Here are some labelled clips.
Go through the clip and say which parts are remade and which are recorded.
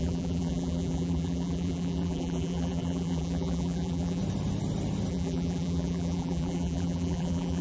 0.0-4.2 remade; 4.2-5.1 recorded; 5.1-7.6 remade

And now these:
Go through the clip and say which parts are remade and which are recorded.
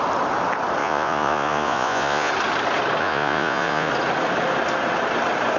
0.0-0.8 recorded; 0.8-2.3 remade; 2.3-3.0 recorded; 3.0-3.9 remade; 3.9-5.6 recorded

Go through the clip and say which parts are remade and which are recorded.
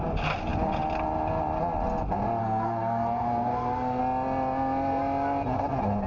0.0-2.4 recorded; 2.4-4.0 remade; 4.0-6.1 recorded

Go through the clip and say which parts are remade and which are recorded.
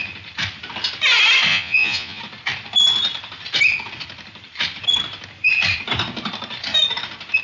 0.0-1.5 recorded; 1.5-2.2 remade; 2.2-7.4 recorded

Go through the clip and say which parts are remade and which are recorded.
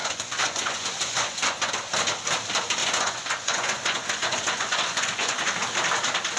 0.0-1.7 remade; 1.7-2.8 recorded; 2.8-5.5 remade; 5.5-6.4 recorded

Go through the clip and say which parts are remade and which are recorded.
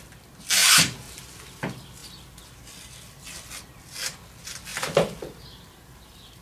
0.0-0.6 recorded; 0.6-1.4 remade; 1.4-6.4 recorded